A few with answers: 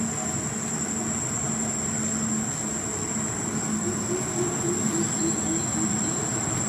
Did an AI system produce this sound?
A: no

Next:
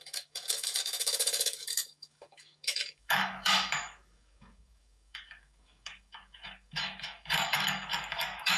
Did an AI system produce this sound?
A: yes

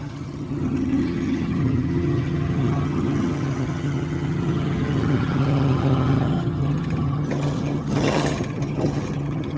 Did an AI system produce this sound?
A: yes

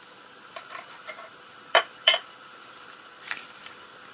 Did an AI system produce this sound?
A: yes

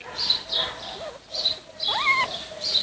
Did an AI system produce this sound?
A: no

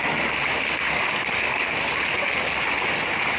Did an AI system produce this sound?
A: no